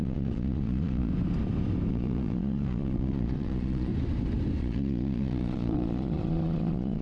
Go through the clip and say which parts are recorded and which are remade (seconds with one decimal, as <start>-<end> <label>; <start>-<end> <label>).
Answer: 0.0-1.1 remade; 1.1-1.9 recorded; 1.9-3.9 remade; 3.9-4.6 recorded; 4.6-7.0 remade